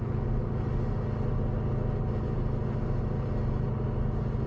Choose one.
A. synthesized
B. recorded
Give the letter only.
B